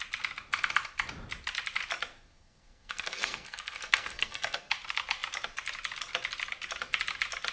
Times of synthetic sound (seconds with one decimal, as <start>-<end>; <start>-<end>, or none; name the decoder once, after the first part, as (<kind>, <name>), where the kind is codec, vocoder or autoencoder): 2.1-4.7 (codec, SNAC)